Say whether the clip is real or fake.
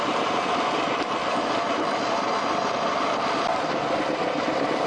real